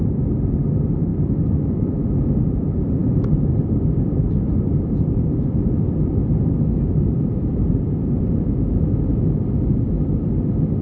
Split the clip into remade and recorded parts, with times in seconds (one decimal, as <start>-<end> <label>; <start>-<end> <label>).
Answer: 0.0-1.1 recorded; 1.1-1.9 remade; 1.9-3.0 recorded; 3.0-8.1 remade; 8.1-9.1 recorded; 9.1-9.8 remade; 9.8-10.8 recorded